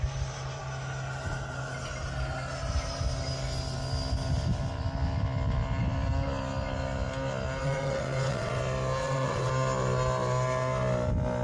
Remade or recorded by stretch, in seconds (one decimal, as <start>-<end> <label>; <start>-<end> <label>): 0.0-7.6 recorded; 7.6-8.6 remade; 8.6-9.0 recorded; 9.0-9.5 remade; 9.5-11.4 recorded